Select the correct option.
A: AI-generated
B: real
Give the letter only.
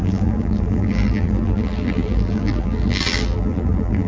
A